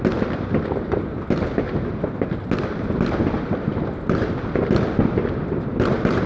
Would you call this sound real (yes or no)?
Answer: yes